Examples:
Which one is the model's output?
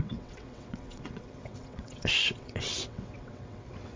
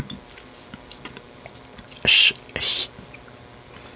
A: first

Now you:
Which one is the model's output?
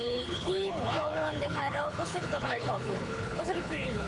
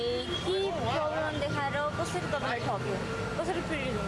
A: first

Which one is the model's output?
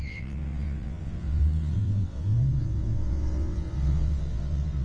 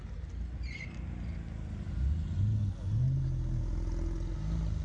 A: first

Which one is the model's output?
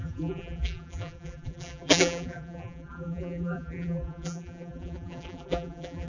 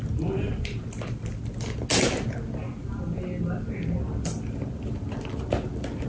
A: first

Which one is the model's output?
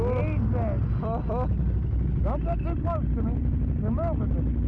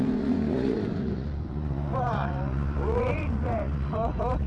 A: second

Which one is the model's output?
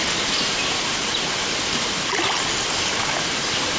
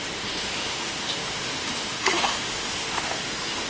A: second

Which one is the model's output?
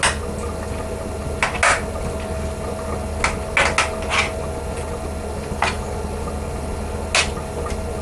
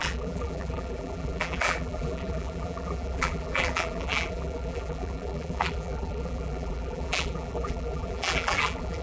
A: second